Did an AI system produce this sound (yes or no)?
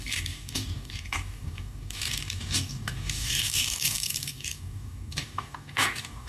yes